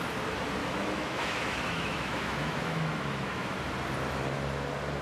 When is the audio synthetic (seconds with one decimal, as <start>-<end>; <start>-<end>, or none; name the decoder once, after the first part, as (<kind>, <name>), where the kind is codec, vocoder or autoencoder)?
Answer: 0.6-3.6 (autoencoder, DAC-VAE)